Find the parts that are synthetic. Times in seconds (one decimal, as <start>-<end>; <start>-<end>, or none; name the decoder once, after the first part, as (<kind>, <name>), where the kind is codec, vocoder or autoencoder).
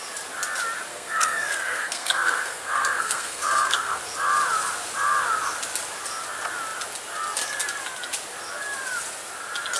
0.9-4.0 (codec, SNAC)